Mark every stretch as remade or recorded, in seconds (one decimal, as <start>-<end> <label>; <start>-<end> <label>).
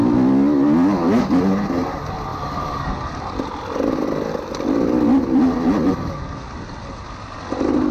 0.0-7.9 recorded